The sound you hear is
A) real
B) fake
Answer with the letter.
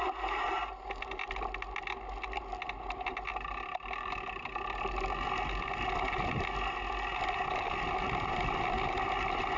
A